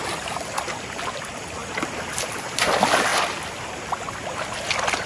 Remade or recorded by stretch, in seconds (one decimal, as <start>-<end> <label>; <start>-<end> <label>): 0.0-5.1 recorded